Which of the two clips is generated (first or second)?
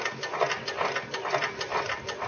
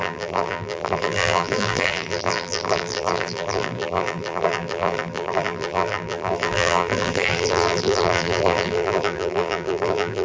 second